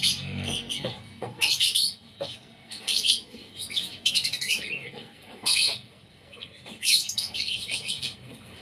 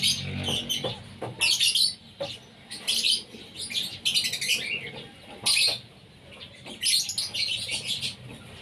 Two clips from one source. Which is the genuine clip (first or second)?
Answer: second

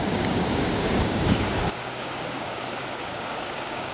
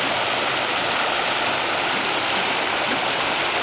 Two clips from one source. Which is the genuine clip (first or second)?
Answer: second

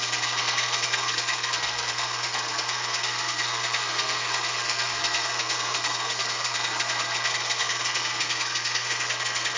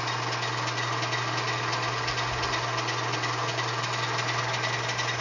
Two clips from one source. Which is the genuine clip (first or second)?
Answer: second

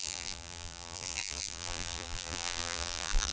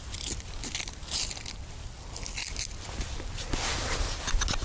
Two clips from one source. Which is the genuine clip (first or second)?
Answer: second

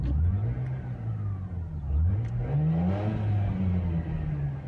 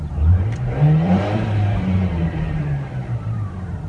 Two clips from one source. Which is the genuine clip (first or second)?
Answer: first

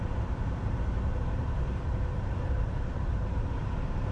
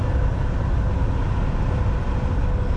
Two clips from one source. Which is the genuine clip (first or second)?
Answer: second